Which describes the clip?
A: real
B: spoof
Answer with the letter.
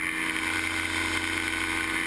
A